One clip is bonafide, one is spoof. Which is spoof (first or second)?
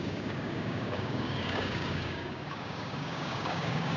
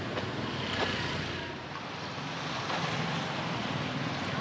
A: first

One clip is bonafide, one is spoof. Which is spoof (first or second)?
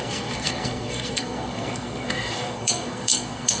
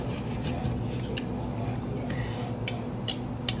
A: first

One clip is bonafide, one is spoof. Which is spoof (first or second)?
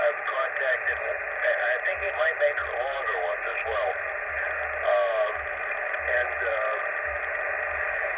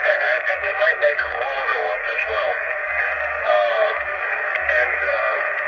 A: second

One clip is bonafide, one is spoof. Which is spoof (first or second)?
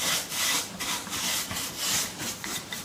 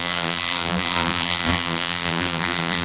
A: second